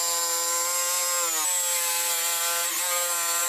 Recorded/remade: recorded